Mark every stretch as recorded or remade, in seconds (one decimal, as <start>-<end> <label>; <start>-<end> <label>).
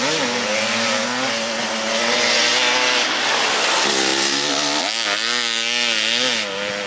0.0-6.9 recorded